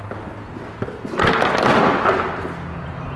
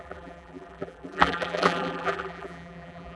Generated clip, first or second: second